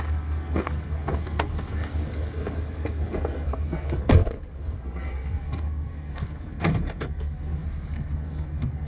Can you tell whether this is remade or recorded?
remade